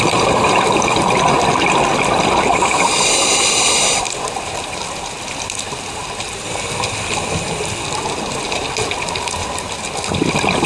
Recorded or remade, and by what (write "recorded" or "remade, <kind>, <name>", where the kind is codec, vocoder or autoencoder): recorded